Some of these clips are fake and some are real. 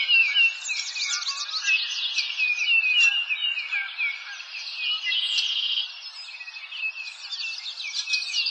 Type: real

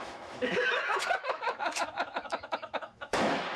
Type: fake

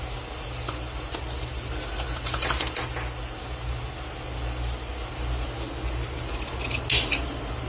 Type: real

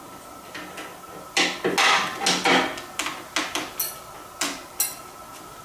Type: real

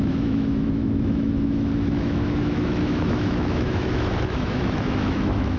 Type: fake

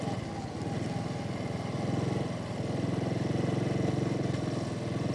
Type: real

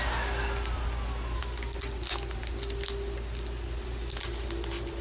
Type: real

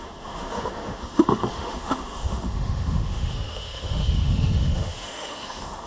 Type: fake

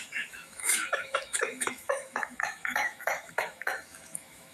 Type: fake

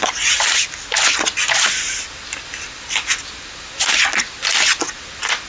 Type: real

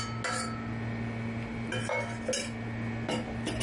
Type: real